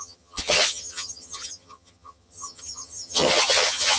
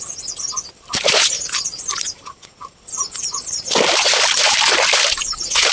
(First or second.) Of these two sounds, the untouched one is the second